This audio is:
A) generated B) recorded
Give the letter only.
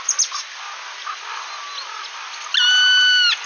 B